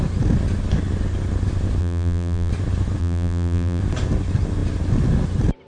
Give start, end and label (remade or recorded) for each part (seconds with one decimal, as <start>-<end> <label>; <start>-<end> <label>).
0.0-1.8 recorded; 1.8-2.5 remade; 2.5-3.0 recorded; 3.0-3.8 remade; 3.8-5.7 recorded